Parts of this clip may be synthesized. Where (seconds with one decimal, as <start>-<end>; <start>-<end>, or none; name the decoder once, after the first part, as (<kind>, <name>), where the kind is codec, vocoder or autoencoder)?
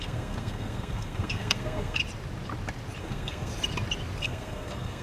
0.0-2.0 (codec, SNAC); 3.0-3.5; 4.2-5.0